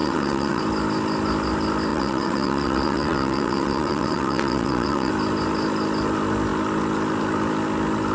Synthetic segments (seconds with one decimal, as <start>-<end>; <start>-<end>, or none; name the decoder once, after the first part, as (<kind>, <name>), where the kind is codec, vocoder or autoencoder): 0.0-0.6 (vocoder, WaveNeXt); 1.9-5.1